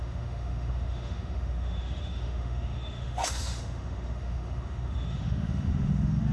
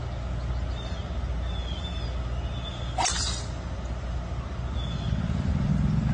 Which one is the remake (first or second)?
first